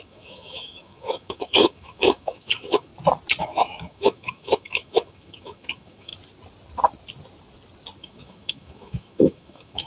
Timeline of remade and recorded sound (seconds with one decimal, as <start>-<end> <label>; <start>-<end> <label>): 0.0-2.9 remade; 2.9-3.4 recorded; 3.4-6.1 remade; 6.1-8.0 recorded; 8.0-9.9 remade